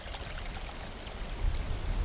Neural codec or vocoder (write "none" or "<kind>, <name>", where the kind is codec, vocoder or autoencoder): none